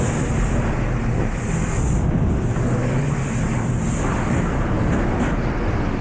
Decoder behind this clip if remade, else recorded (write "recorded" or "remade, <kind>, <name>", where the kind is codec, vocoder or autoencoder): recorded